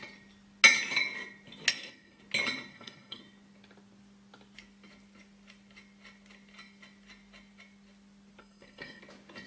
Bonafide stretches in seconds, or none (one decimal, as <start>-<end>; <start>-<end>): 0.0-1.7; 2.2-2.7; 3.2-8.4; 9.0-9.5